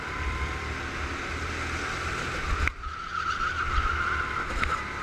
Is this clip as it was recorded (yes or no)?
yes